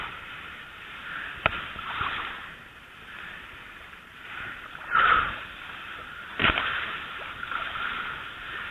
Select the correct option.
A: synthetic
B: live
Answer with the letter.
A